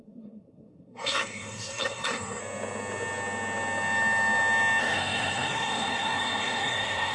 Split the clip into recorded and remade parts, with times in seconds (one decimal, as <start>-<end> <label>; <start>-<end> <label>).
0.0-2.4 remade; 2.4-4.8 recorded; 4.8-7.1 remade